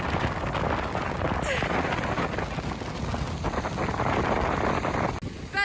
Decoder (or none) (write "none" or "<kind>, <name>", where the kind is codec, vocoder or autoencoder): none